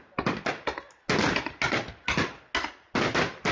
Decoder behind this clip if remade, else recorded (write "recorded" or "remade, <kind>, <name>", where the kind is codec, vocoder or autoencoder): recorded